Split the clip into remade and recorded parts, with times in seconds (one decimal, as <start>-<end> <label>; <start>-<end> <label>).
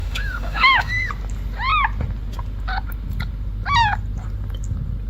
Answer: 0.0-1.1 remade; 1.1-5.1 recorded